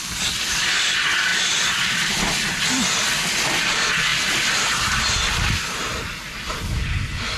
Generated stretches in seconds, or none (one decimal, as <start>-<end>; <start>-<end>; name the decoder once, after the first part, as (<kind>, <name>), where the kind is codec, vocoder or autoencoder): none